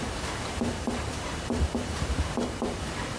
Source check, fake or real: fake